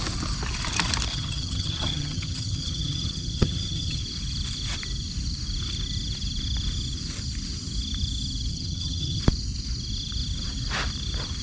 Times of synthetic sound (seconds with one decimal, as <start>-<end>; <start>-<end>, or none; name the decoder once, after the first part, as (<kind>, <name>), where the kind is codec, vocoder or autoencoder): 1.1-4.0 (vocoder, HiFi-GAN); 8.5-9.2